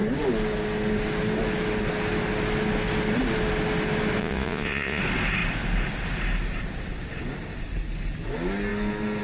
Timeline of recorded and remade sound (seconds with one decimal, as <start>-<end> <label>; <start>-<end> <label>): 0.0-4.2 recorded; 4.2-5.0 remade; 5.0-9.2 recorded